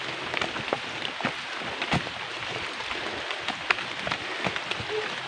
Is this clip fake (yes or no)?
yes